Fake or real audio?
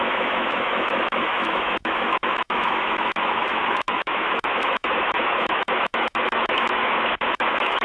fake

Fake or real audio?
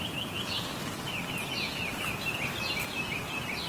real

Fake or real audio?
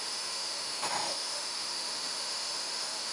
fake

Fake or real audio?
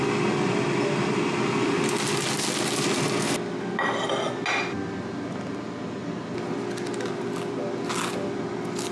real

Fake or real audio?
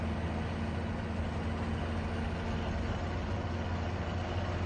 real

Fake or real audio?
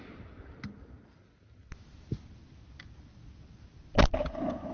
real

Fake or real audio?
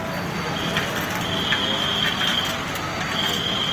real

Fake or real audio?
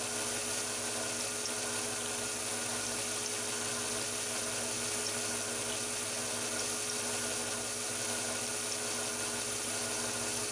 real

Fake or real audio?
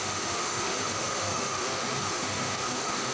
fake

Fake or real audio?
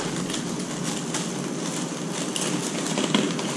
real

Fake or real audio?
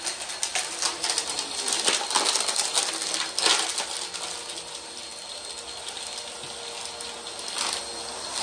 real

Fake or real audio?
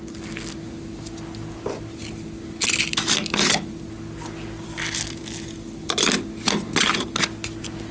real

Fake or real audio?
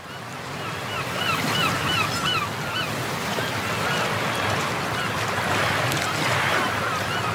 real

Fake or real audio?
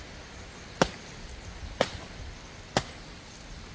real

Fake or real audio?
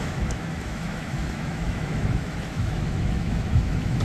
fake